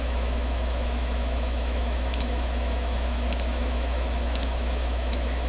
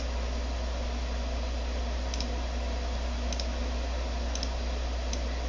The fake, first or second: first